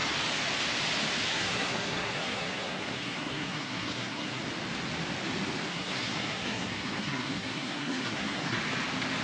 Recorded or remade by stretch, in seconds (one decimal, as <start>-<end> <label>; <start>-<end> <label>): 0.0-1.3 recorded; 1.3-4.4 remade; 4.4-5.7 recorded; 5.7-8.6 remade; 8.6-9.2 recorded